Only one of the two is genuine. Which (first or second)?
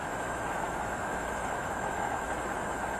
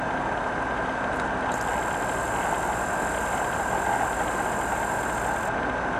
second